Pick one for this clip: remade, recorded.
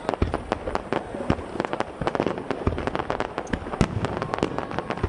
recorded